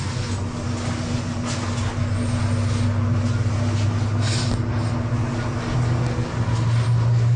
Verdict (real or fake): real